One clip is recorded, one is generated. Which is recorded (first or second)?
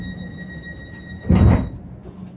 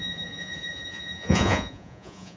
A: first